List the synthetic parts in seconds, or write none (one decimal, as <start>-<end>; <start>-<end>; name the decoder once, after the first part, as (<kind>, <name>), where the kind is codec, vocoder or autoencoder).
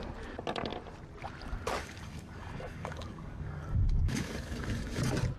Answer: 1.8-5.0 (codec, DAC)